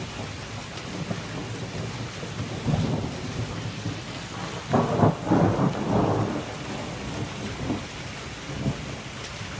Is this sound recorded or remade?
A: recorded